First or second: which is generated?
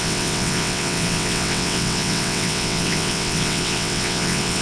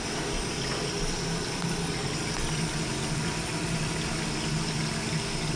first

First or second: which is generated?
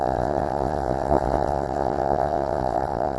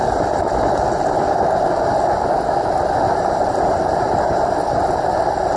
first